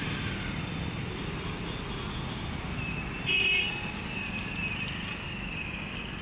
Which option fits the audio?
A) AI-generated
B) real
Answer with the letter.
B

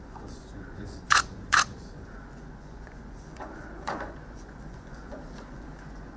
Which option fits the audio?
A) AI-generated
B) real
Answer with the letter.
A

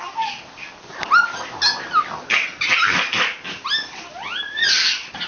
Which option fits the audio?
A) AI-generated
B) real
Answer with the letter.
B